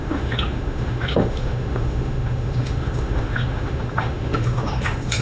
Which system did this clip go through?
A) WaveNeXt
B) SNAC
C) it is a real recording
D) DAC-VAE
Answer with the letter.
D